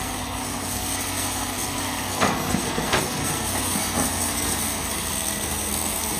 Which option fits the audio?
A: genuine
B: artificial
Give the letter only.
B